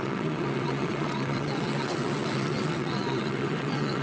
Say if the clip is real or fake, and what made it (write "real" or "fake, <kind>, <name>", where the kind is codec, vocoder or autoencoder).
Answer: fake, vocoder, WaveNeXt